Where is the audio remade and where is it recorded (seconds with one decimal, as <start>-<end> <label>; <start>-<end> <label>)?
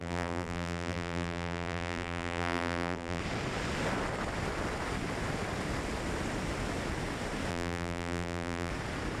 0.0-3.2 remade; 3.2-7.5 recorded; 7.5-8.7 remade; 8.7-9.2 recorded